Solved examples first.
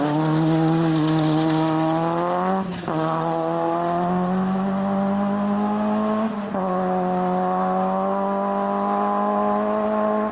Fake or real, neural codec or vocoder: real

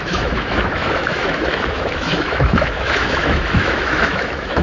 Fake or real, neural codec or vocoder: fake, autoencoder, DAC-VAE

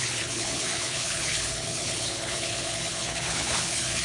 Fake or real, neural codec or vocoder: fake, codec, HILCodec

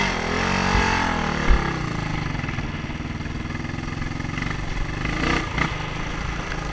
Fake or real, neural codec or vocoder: real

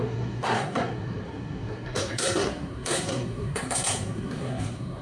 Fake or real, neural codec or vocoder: fake, codec, SNAC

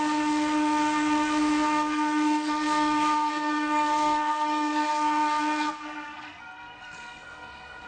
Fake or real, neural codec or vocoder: fake, codec, SNAC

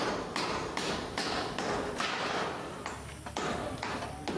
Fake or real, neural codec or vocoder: real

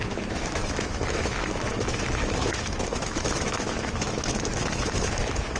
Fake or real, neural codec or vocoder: fake, autoencoder, DAC-VAE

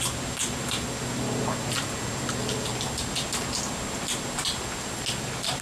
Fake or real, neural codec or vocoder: real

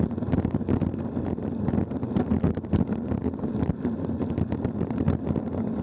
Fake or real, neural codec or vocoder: real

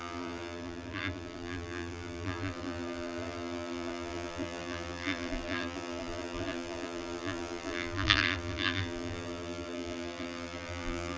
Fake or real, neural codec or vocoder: fake, vocoder, BigVGAN v2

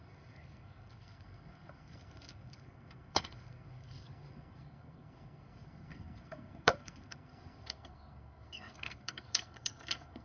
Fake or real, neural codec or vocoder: fake, codec, SNAC